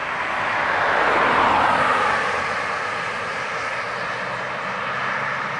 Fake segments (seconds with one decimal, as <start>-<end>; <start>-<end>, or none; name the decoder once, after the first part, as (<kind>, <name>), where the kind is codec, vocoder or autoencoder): none